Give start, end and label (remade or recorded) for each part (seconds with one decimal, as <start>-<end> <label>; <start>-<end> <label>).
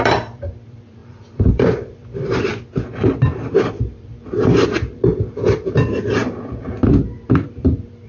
0.0-2.5 remade; 2.5-3.2 recorded; 3.2-8.1 remade